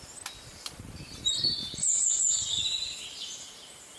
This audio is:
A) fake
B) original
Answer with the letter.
B